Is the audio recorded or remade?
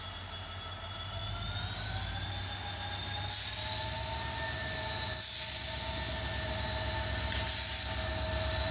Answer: recorded